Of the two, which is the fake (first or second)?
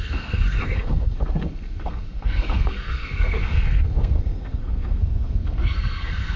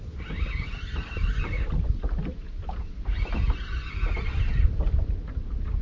first